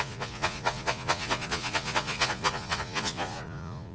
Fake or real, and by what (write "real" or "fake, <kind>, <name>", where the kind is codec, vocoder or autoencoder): fake, vocoder, Vocos